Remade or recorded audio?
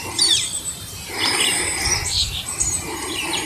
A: remade